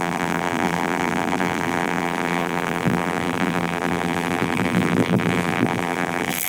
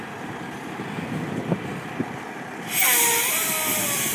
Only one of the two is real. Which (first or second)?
second